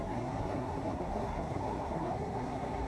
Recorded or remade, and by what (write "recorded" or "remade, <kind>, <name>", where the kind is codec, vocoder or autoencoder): remade, codec, SNAC